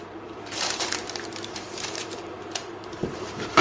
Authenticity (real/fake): fake